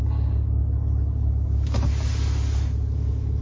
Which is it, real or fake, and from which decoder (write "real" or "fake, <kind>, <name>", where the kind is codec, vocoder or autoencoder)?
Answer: real